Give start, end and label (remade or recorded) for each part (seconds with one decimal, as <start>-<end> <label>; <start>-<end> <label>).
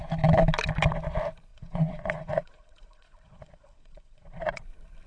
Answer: 0.0-1.5 recorded; 1.5-4.6 remade; 4.6-5.1 recorded